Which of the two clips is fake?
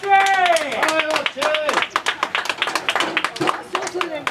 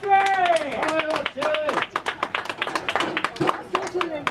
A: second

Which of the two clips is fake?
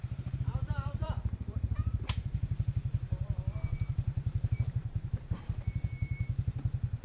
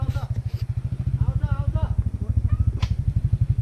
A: first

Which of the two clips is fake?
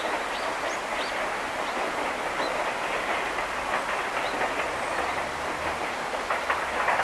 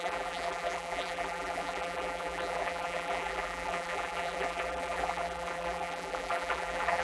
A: second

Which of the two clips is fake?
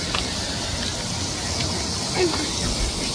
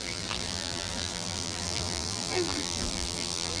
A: second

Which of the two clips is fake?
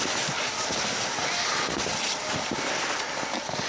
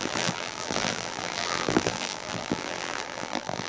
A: second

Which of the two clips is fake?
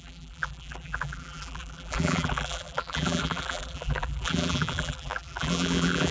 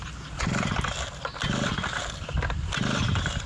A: first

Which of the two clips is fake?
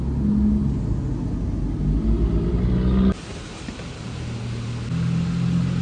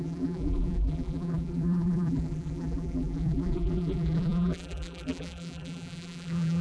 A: second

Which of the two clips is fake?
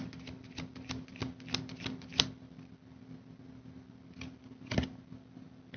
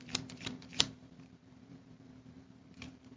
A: second